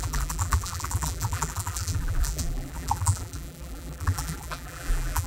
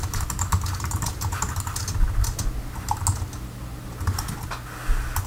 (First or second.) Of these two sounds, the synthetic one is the first